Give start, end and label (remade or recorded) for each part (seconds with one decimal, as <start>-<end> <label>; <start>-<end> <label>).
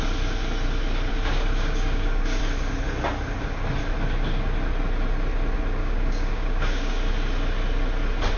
0.0-1.1 recorded; 1.1-2.4 remade; 2.4-5.8 recorded; 5.8-7.1 remade; 7.1-8.4 recorded